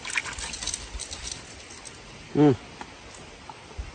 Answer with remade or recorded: recorded